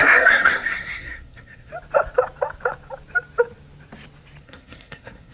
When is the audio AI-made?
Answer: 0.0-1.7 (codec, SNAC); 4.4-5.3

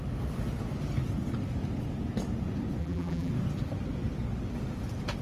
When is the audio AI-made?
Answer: 2.8-3.3 (vocoder, BigVGAN v2)

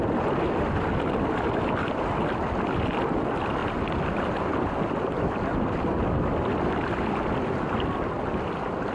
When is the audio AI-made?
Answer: none